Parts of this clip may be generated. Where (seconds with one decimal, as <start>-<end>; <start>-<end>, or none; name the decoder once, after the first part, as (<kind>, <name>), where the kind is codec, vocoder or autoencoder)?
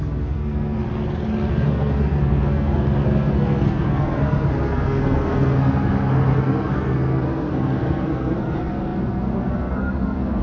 0.0-0.8 (codec, SNAC); 1.5-10.4